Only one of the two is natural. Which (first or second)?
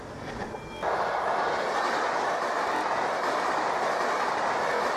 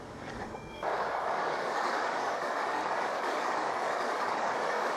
first